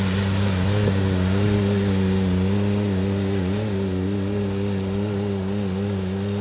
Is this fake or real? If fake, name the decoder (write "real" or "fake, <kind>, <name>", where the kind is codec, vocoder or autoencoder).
real